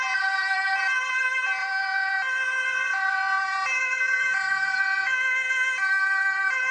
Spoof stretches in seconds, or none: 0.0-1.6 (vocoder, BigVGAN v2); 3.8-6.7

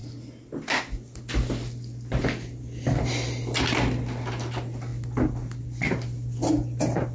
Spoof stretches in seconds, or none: none

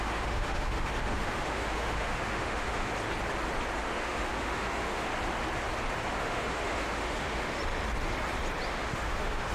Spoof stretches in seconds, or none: 0.0-2.9 (autoencoder, DAC-VAE); 3.8-5.1; 6.1-7.6; 8.7-9.5